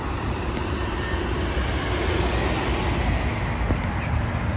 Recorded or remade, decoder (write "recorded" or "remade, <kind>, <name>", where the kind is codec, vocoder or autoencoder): recorded